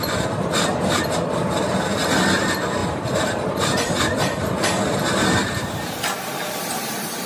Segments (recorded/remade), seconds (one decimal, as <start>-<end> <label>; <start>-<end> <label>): 0.0-0.7 recorded; 0.7-1.3 remade; 1.3-2.8 recorded; 2.8-7.3 remade